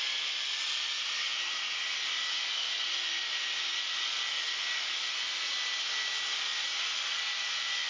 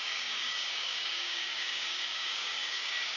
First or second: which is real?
first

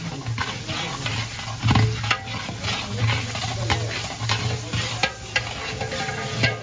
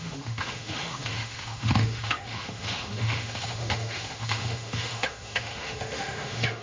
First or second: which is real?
first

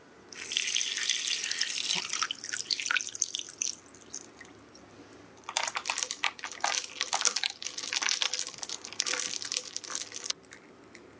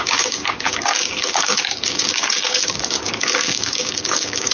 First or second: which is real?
first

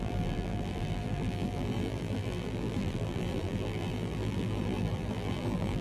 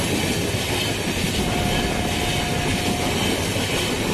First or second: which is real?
second